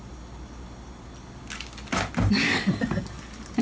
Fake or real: real